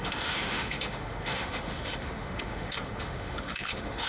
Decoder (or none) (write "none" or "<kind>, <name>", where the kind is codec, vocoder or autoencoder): autoencoder, DAC-VAE